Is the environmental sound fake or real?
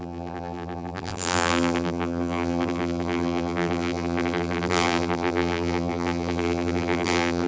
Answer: fake